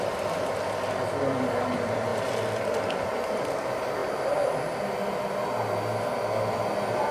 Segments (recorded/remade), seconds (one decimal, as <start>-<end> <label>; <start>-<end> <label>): 0.0-4.0 remade; 4.0-7.1 recorded